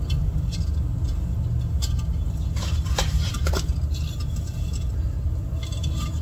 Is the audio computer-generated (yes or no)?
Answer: no